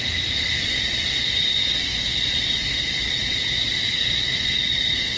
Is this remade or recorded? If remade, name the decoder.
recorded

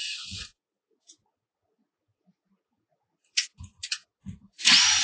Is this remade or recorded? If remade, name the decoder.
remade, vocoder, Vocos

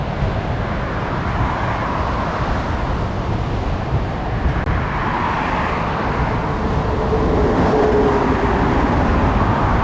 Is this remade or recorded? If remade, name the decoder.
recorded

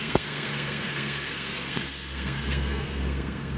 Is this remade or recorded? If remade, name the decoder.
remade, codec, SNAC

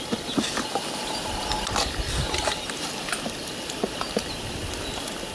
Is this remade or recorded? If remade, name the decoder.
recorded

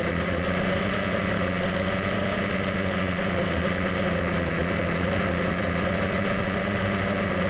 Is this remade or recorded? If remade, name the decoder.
recorded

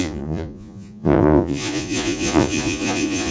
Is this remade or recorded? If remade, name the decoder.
remade, vocoder, Vocos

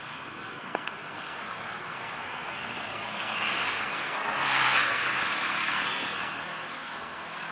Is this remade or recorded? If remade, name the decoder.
remade, codec, SNAC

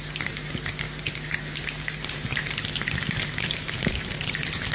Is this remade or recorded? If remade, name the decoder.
recorded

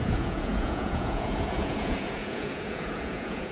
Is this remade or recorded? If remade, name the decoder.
remade, vocoder, Vocos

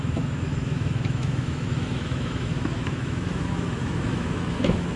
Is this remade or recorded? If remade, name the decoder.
remade, autoencoder, DAC-VAE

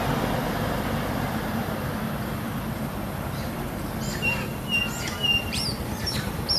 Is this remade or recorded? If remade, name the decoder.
remade, vocoder, BigVGAN v2